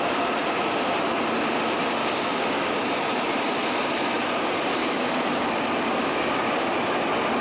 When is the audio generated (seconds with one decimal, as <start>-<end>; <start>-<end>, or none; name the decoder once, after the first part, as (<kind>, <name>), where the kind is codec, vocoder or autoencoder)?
2.0-2.7 (codec, DAC); 4.8-5.5; 6.0-6.5